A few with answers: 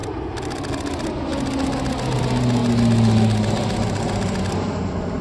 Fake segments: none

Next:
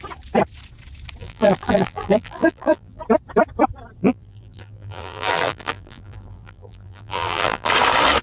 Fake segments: 1.2-3.0 (vocoder, BigVGAN v2); 4.0-7.7

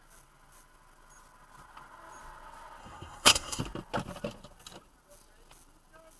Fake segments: 2.8-3.6 (codec, SNAC)

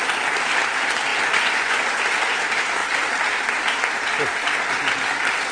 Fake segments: 1.1-2.0 (vocoder, Vocos)

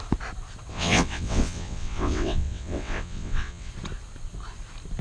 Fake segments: 0.7-3.7 (vocoder, WaveNeXt)

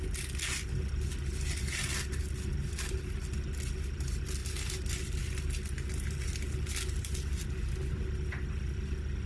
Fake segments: none